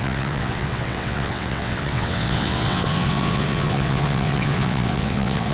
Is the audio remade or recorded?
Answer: remade